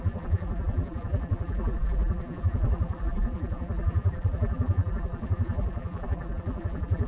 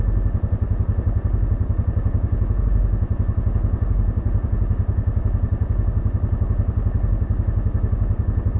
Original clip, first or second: second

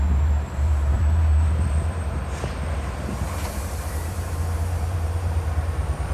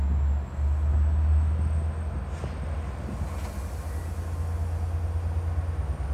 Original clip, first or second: second